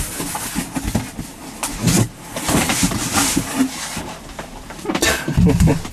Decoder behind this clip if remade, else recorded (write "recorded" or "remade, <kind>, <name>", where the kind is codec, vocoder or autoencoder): recorded